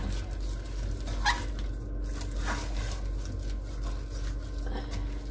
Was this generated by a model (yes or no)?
no